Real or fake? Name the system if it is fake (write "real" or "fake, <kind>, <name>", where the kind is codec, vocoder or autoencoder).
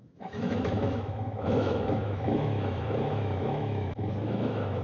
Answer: fake, autoencoder, DAC-VAE